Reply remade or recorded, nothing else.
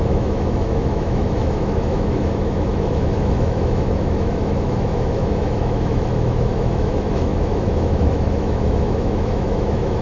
remade